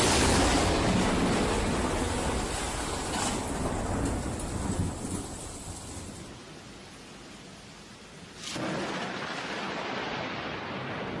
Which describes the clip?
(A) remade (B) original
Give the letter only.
B